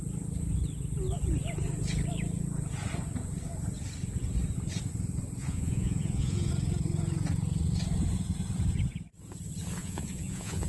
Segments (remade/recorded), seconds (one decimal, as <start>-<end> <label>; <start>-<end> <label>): 0.0-5.4 recorded; 5.4-6.5 remade; 6.5-9.8 recorded; 9.8-10.7 remade